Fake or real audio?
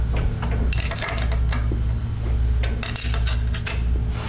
real